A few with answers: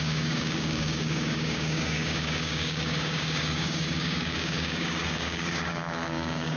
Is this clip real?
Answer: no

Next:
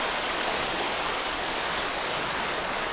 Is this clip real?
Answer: no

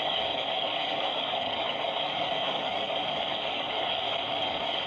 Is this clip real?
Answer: no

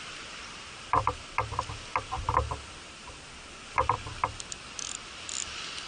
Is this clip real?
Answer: yes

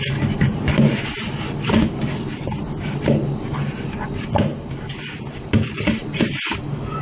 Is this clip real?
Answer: yes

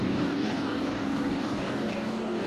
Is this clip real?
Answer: no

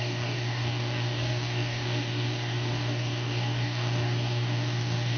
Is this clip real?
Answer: no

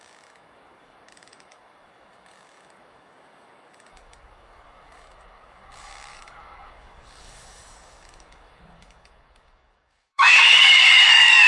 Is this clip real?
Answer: no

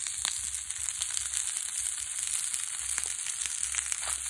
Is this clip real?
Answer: yes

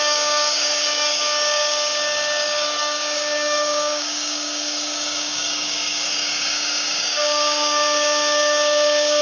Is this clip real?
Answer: no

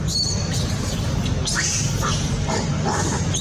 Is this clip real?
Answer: yes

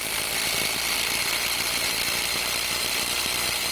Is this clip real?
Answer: yes